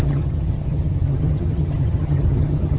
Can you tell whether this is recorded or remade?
remade